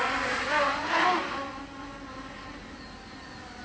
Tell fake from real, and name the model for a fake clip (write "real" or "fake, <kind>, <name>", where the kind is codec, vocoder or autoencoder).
real